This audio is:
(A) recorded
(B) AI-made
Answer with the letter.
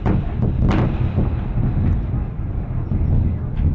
A